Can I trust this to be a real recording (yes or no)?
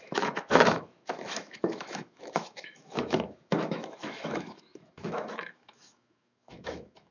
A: no